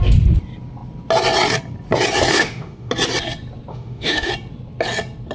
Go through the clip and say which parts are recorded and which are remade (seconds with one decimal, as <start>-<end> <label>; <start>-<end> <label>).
0.0-2.3 recorded; 2.3-2.9 remade; 2.9-3.7 recorded; 3.7-4.3 remade; 4.3-5.3 recorded